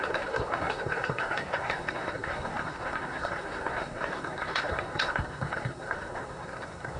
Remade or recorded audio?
remade